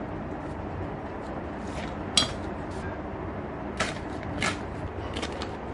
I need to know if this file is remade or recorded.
recorded